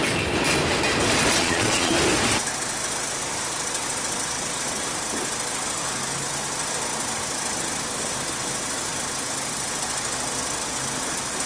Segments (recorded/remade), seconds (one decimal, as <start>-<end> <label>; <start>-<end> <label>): 0.0-1.4 recorded; 1.4-1.9 remade; 1.9-11.5 recorded